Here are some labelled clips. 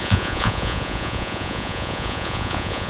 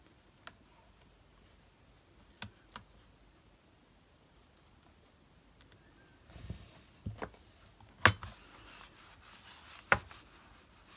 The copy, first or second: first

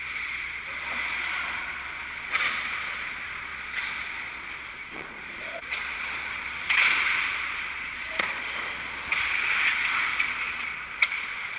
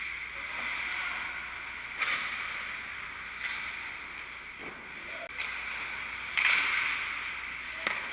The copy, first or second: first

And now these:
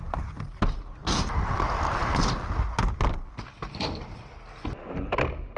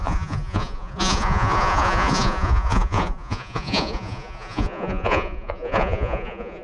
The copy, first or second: second